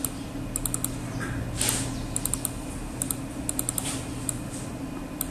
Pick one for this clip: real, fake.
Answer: real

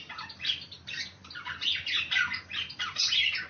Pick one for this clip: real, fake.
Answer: real